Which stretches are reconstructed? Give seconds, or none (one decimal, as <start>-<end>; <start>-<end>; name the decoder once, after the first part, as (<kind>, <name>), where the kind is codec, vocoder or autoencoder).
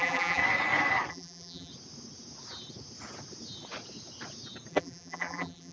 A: 0.0-0.4 (vocoder, BigVGAN v2); 1.1-1.7; 4.7-5.7